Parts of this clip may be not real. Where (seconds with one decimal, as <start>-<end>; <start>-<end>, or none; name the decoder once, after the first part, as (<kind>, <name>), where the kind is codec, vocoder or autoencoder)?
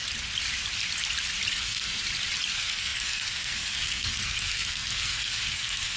1.5-2.0 (codec, SNAC); 2.5-6.0